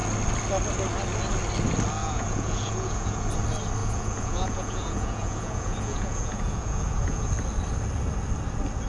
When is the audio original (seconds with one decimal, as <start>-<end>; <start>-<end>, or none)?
0.0-2.0; 3.3-3.8; 7.3-8.9